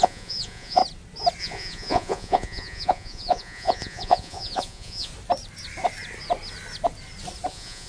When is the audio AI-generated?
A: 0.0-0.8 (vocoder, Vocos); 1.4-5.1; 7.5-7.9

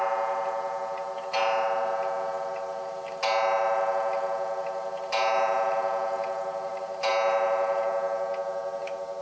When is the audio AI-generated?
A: none

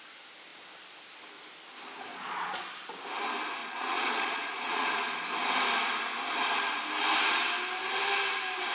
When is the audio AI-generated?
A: 2.1-2.7 (vocoder, Vocos); 3.6-4.9

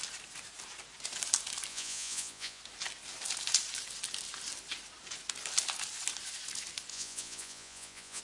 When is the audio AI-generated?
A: 1.7-2.6 (vocoder, Vocos); 6.9-8.2

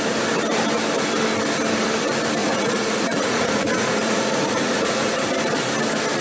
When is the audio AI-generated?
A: 2.4-5.2 (vocoder, Vocos)

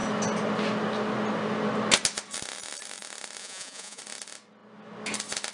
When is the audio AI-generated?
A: 3.4-4.0 (vocoder, Vocos)

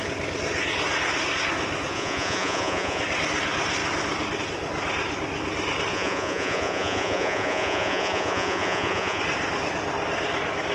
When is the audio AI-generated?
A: 1.9-3.0 (vocoder, Vocos); 5.9-9.2